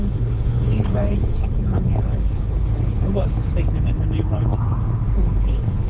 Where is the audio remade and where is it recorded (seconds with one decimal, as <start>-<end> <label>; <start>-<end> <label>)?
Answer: 0.0-4.5 remade; 4.5-5.2 recorded; 5.2-5.9 remade